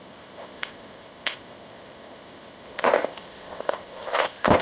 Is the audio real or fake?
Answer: fake